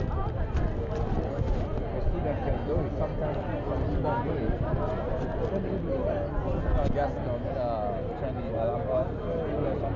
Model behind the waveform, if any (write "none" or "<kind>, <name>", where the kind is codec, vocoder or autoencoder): none